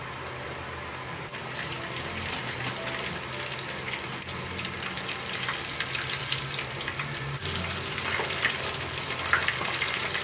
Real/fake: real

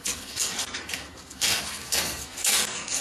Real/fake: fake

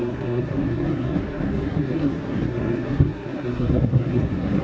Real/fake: fake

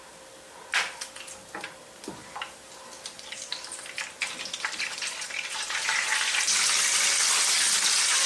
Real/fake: real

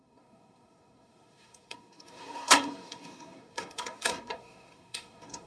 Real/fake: fake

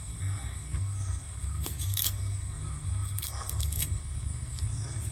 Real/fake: fake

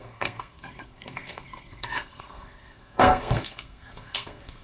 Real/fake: fake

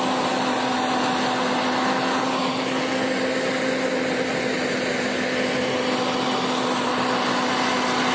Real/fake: real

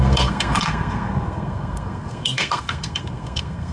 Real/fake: fake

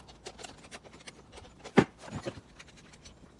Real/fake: real